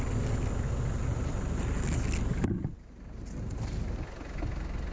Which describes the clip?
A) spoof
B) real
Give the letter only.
B